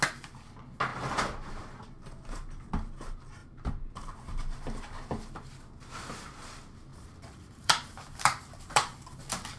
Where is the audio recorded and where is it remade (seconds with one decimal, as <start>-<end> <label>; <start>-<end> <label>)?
0.0-3.4 recorded; 3.4-4.1 remade; 4.1-6.9 recorded; 6.9-9.2 remade; 9.2-9.6 recorded